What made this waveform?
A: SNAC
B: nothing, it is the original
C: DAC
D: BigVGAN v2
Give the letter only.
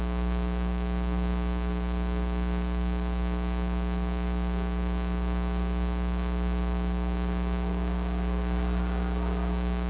C